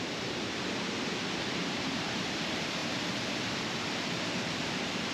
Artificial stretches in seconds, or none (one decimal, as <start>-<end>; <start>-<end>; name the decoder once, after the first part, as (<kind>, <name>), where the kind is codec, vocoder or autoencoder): 0.0-5.1 (vocoder, BigVGAN v2)